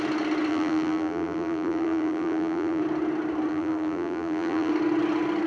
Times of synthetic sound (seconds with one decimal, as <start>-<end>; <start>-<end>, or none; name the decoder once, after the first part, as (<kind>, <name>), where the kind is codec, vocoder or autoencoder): 0.5-2.8 (vocoder, BigVGAN v2); 3.5-4.7